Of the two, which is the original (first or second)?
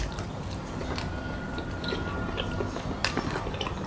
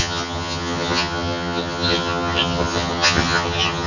first